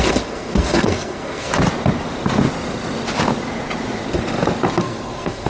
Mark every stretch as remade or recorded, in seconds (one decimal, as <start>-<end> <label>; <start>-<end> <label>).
0.0-1.5 remade; 1.5-4.8 recorded; 4.8-5.5 remade

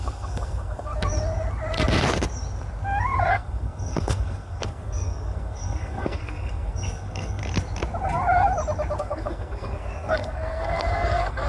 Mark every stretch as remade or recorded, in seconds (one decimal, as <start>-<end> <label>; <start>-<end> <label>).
0.0-0.9 remade; 0.9-3.3 recorded; 3.3-7.4 remade; 7.4-9.0 recorded; 9.0-11.5 remade

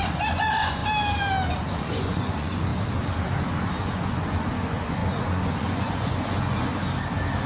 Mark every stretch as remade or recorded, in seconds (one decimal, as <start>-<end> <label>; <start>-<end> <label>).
0.0-0.8 remade; 0.8-1.7 recorded; 1.7-2.7 remade; 2.7-3.8 recorded; 3.8-6.7 remade; 6.7-7.5 recorded

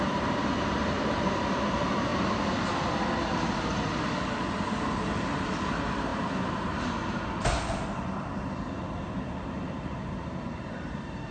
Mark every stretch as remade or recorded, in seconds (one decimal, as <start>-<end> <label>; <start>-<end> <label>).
0.0-2.1 remade; 2.1-4.7 recorded; 4.7-11.3 remade

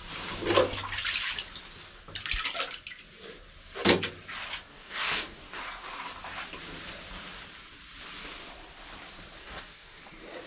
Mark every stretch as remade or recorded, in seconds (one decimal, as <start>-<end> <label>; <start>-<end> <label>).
0.0-4.7 recorded; 4.7-5.6 remade; 5.6-9.4 recorded; 9.4-10.0 remade; 10.0-10.5 recorded